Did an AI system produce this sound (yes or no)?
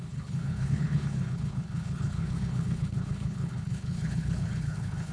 yes